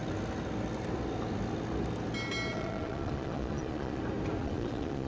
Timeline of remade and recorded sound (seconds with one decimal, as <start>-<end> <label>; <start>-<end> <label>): 0.0-2.5 recorded; 2.5-4.0 remade; 4.0-4.4 recorded; 4.4-5.1 remade